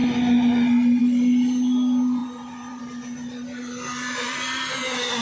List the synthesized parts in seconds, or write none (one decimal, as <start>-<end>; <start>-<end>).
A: 2.2-2.8